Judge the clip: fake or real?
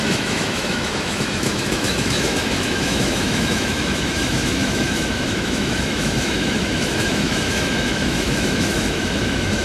fake